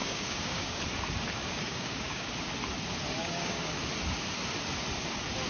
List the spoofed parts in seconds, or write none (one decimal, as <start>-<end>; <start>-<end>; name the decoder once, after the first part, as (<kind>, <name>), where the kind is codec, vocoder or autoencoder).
0.0-0.8 (codec, DAC); 1.4-2.3; 3.2-3.7